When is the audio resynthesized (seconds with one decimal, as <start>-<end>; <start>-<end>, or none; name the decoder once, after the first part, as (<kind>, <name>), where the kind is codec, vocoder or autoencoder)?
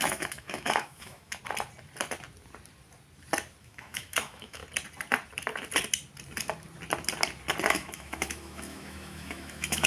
0.0-1.4 (autoencoder, DAC-VAE); 3.6-4.6; 7.7-9.9